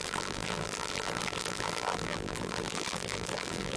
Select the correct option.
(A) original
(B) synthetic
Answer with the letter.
B